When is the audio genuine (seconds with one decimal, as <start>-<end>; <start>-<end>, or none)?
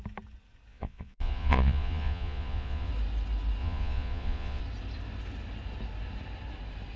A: 0.0-0.7; 2.9-3.6; 4.6-7.0